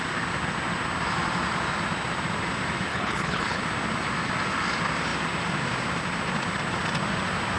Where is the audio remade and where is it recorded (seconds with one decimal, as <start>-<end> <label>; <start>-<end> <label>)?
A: 0.0-2.9 recorded; 2.9-3.6 remade; 3.6-7.6 recorded